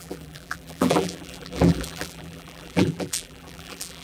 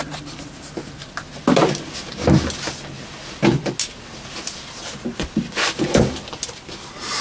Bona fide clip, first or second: second